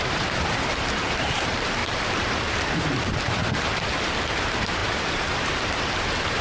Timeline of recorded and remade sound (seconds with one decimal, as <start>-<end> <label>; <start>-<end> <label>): 0.0-3.4 remade; 3.4-4.2 recorded; 4.2-6.4 remade